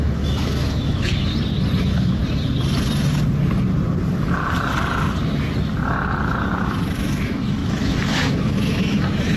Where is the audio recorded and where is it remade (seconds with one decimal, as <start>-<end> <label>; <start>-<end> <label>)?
0.0-1.3 remade; 1.3-1.8 recorded; 1.8-2.2 remade; 2.2-6.6 recorded; 6.6-9.4 remade